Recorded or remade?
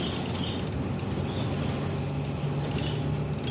recorded